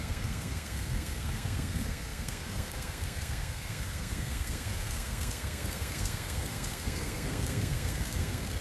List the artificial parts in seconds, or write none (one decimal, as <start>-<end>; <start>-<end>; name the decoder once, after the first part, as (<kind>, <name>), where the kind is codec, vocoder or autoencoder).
0.0-8.6 (codec, SNAC)